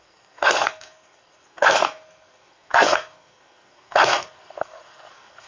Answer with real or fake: fake